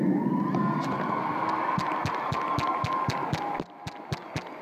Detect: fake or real real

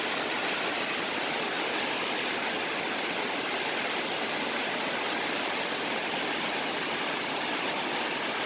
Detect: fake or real real